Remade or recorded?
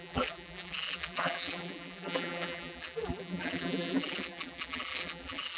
remade